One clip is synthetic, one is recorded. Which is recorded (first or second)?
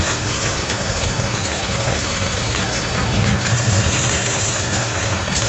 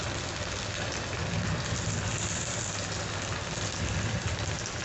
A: second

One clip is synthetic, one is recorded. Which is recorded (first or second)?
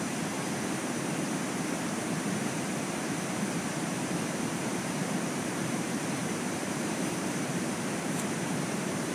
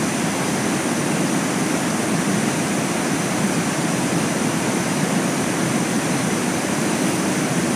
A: second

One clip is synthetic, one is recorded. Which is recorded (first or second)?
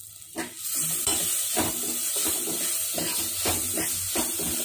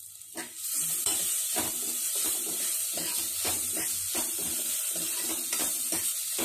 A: first